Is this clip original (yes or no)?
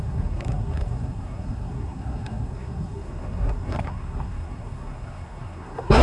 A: no